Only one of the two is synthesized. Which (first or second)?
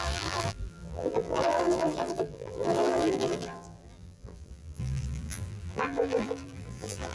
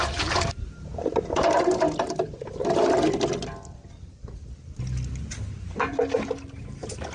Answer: first